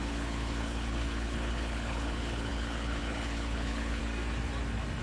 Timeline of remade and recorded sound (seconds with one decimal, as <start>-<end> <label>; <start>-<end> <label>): 0.0-4.0 remade; 4.0-5.0 recorded